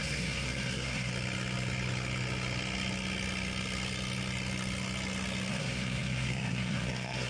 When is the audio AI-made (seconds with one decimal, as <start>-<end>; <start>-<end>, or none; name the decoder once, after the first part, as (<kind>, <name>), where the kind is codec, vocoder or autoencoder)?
0.0-1.1 (codec, SNAC); 5.5-7.3